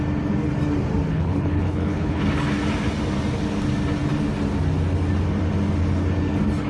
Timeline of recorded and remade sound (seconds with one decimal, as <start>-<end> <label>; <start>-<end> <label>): 0.0-1.1 recorded; 1.1-2.2 remade; 2.2-6.7 recorded